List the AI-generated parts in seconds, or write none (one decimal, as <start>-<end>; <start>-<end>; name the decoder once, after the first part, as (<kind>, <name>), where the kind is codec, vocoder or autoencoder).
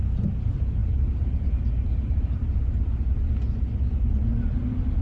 0.8-3.1 (vocoder, BigVGAN v2)